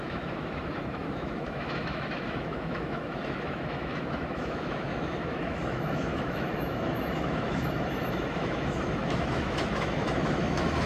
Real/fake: fake